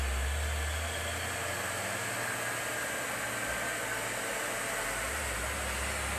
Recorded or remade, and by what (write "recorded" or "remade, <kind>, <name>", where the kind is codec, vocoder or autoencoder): recorded